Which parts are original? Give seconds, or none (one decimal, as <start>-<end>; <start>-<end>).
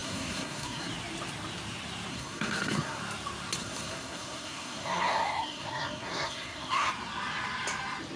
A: 0.9-2.1; 3.0-3.6; 6.9-8.2